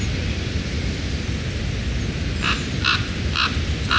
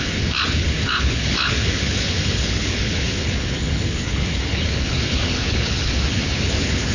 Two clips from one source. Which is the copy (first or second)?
second